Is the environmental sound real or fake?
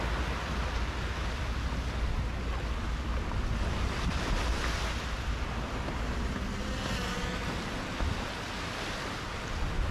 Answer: real